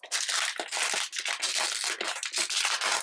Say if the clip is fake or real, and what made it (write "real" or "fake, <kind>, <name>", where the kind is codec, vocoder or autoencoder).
real